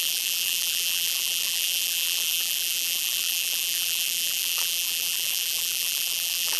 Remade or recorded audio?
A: remade